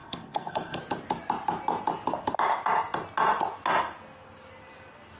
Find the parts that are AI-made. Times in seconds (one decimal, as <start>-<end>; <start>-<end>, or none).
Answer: 0.0-0.8

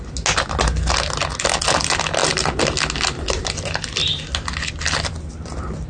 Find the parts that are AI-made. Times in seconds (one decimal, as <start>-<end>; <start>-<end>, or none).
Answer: none

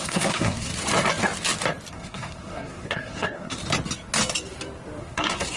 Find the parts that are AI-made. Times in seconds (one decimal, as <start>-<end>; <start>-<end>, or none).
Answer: 0.0-0.7; 1.9-3.6; 5.0-5.6

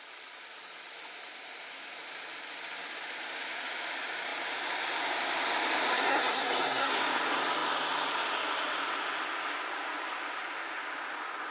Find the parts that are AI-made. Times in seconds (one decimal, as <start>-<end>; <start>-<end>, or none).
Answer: 5.9-6.9

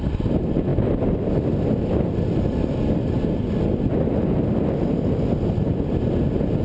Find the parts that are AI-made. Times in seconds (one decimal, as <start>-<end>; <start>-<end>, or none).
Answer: none

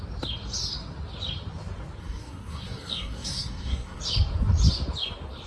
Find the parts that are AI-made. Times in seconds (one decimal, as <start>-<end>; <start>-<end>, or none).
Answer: 2.0-4.0

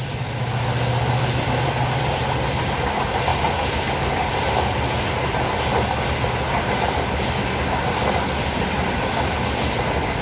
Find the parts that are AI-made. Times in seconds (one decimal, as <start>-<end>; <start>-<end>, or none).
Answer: none